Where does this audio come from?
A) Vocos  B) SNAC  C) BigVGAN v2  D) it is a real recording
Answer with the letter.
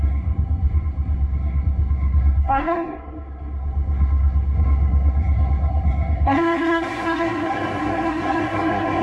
B